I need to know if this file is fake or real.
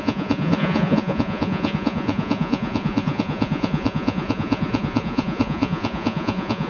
fake